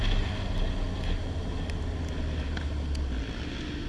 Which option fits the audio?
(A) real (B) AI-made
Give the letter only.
A